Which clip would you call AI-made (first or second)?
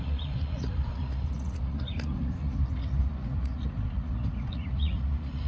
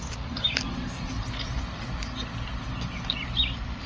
first